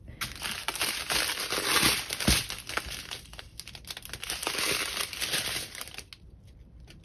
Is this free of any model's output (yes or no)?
yes